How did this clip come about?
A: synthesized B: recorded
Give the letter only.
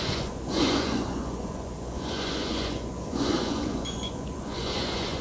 A